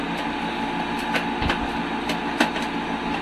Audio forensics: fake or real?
real